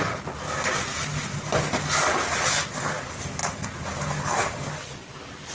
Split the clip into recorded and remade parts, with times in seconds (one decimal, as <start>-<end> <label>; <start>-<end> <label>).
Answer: 0.0-5.5 recorded